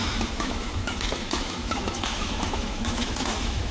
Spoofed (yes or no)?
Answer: yes